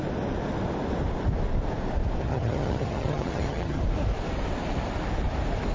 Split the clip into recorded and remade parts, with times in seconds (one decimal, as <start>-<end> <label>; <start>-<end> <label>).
0.0-2.2 recorded; 2.2-3.8 remade; 3.8-5.7 recorded